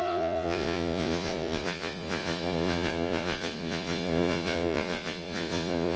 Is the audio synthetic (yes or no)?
yes